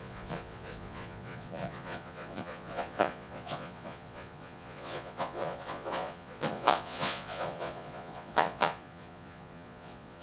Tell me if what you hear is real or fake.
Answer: fake